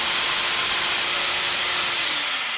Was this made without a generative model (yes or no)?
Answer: yes